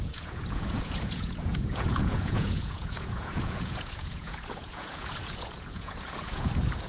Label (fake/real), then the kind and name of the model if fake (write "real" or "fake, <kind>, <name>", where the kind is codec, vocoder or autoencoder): fake, vocoder, Vocos